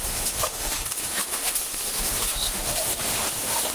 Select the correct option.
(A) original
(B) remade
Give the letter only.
B